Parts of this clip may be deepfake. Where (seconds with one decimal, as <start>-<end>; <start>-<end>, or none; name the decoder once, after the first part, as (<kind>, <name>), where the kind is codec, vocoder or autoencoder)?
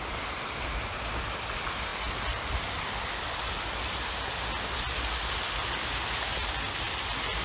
none